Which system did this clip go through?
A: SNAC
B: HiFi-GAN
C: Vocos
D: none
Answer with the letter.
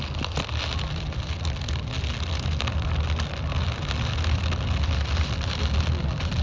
D